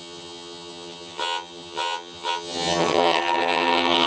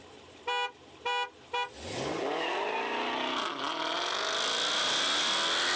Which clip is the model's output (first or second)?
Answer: first